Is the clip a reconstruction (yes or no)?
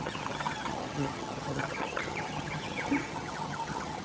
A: yes